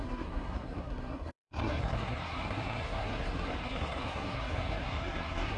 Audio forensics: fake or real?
fake